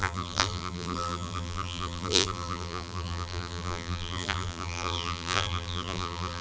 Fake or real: fake